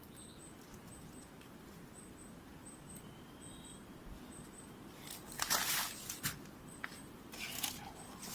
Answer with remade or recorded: recorded